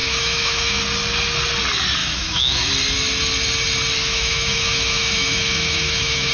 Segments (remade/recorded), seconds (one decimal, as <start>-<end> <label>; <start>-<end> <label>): 0.0-0.8 remade; 0.8-2.0 recorded; 2.0-2.7 remade; 2.7-4.0 recorded; 4.0-6.3 remade